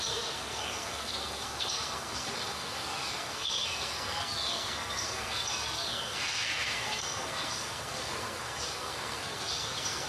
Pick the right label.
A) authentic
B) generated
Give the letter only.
B